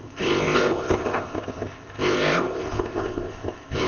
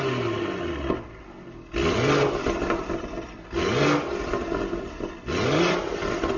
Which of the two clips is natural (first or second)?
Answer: second